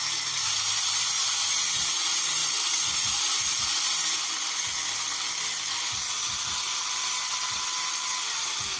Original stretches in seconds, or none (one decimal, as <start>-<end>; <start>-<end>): 0.0-8.8